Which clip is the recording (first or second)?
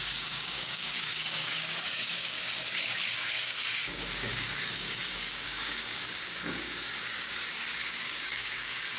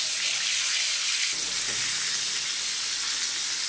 second